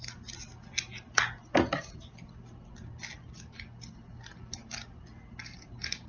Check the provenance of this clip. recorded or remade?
recorded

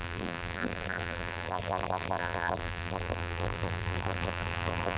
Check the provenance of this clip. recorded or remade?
remade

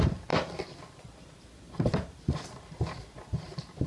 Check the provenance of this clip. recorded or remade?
remade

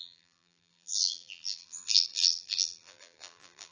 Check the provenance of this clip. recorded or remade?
remade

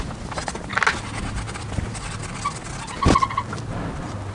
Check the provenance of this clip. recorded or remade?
recorded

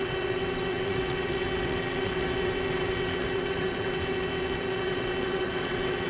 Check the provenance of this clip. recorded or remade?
remade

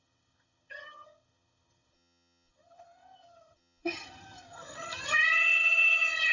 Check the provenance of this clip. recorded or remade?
remade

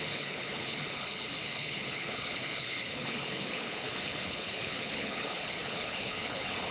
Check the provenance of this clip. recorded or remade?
remade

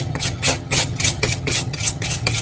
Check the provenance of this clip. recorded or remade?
remade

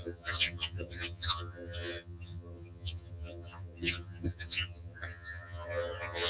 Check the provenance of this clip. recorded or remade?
remade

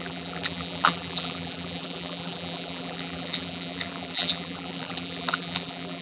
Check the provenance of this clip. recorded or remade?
remade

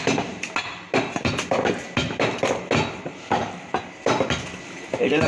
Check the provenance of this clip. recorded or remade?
recorded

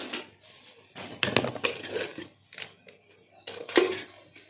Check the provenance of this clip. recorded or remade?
recorded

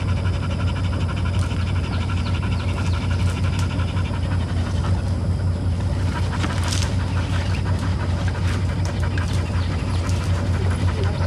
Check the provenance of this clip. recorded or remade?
recorded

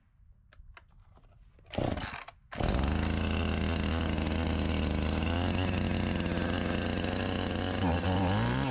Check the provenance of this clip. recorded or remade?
recorded